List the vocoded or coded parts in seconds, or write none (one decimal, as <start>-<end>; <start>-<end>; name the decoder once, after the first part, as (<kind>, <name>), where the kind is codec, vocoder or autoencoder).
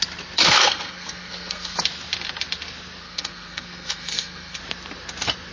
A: 0.4-1.8 (codec, SNAC); 3.0-4.6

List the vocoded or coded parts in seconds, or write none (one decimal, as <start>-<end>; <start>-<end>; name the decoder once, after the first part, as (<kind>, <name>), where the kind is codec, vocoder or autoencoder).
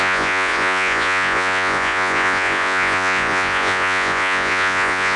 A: 0.0-5.2 (vocoder, Vocos)